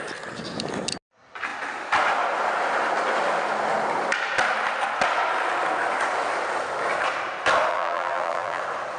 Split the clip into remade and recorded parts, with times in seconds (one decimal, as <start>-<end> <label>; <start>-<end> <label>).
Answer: 0.0-7.7 recorded; 7.7-8.6 remade; 8.6-9.0 recorded